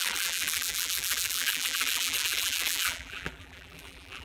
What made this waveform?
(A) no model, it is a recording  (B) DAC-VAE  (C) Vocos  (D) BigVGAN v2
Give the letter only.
D